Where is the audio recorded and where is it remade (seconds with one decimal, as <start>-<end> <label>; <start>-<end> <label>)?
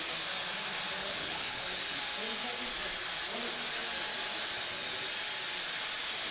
0.0-1.0 recorded; 1.0-2.0 remade; 2.0-6.3 recorded